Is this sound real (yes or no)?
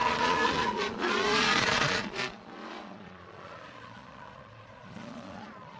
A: no